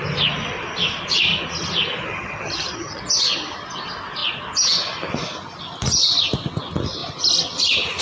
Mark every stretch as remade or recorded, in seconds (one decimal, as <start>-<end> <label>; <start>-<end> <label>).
0.0-2.1 recorded; 2.1-3.0 remade; 3.0-8.0 recorded